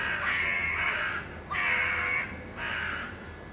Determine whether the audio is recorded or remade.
recorded